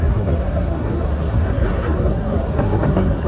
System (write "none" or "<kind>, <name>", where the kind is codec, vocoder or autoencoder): codec, SNAC